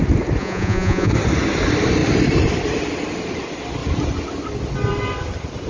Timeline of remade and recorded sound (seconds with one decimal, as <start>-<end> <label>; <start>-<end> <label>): 0.0-0.4 recorded; 0.4-1.1 remade; 1.1-5.7 recorded